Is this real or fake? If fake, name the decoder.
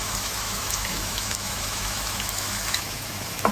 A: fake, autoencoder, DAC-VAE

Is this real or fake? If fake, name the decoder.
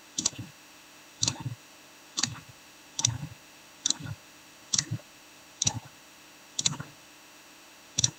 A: fake, autoencoder, DAC-VAE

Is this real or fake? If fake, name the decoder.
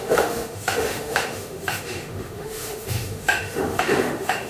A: fake, autoencoder, DAC-VAE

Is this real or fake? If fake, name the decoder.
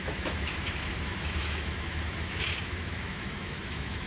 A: fake, autoencoder, DAC-VAE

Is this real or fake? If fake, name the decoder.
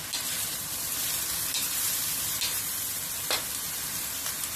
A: real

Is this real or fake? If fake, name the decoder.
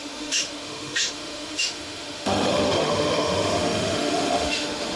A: fake, autoencoder, DAC-VAE